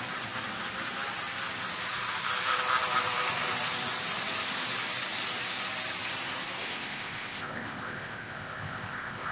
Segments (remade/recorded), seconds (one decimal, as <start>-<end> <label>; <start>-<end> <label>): 0.0-6.6 recorded; 6.6-9.3 remade